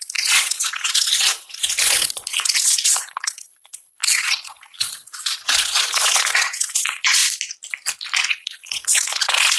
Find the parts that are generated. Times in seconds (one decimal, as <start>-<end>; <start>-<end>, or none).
0.0-7.2; 8.3-9.6